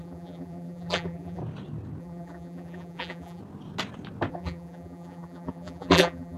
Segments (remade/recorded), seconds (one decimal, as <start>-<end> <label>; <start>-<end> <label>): 0.0-1.4 remade; 1.4-2.0 recorded; 2.0-3.4 remade; 3.4-4.3 recorded; 4.3-6.4 remade